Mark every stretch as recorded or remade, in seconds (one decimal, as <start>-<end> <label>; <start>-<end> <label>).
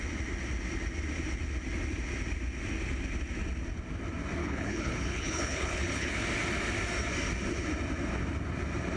0.0-4.4 recorded; 4.4-6.1 remade; 6.1-9.0 recorded